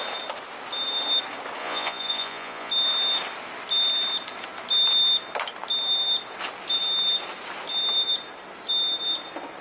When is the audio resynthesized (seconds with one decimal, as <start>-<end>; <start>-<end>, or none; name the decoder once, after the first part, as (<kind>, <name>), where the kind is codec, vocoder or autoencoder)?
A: 1.6-2.7 (vocoder, Vocos)